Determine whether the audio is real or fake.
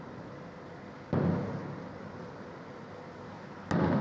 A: real